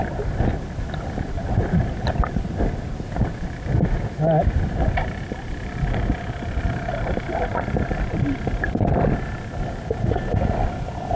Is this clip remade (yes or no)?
no